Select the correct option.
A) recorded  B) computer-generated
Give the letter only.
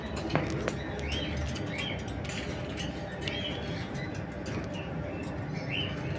A